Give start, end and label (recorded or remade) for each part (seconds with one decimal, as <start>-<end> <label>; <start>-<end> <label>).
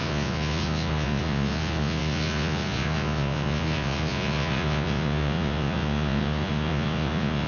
0.0-7.5 remade